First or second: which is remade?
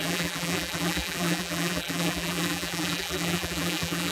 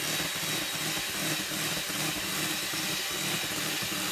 first